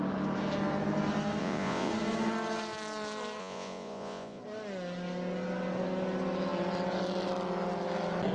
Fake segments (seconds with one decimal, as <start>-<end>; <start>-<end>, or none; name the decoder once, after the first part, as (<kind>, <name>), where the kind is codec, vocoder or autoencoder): 1.4-1.9 (vocoder, Vocos); 3.4-4.4